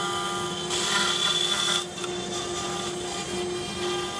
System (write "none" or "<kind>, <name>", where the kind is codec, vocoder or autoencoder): none